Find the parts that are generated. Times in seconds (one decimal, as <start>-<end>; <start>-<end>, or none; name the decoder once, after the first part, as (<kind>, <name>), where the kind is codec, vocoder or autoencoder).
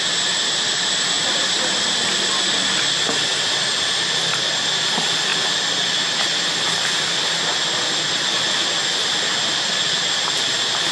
none